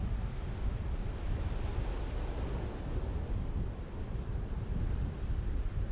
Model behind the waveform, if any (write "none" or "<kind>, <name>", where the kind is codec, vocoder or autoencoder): none